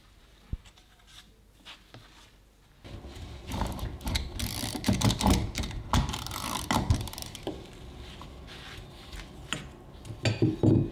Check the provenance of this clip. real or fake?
real